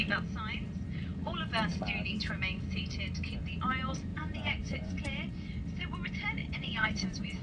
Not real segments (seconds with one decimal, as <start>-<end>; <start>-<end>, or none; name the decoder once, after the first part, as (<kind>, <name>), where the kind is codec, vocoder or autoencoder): 4.1-5.3 (vocoder, Vocos); 6.4-7.4